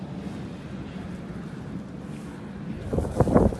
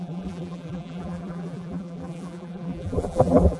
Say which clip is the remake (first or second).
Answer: second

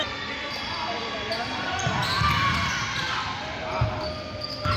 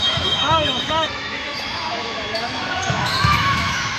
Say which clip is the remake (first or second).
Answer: second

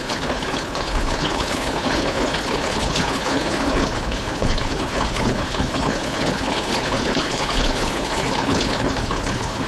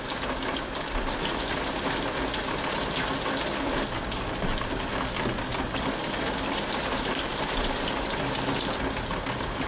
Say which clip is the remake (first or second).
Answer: first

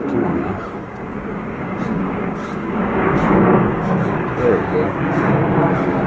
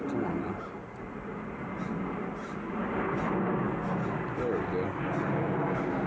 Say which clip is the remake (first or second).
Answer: first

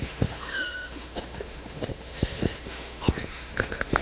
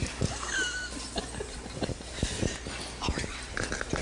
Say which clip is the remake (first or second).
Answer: first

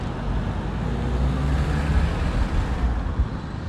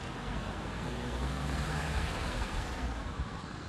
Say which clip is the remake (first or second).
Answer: second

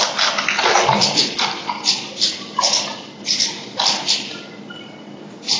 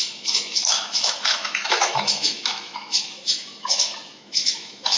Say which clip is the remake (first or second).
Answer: second